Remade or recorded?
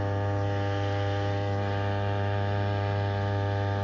recorded